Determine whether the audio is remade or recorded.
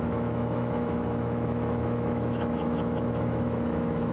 remade